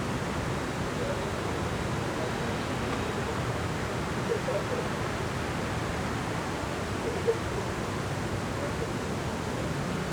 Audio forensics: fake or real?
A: real